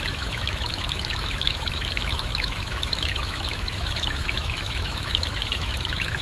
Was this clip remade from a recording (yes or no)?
yes